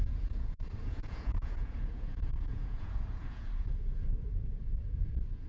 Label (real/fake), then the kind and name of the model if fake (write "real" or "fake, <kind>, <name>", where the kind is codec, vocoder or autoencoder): fake, vocoder, Vocos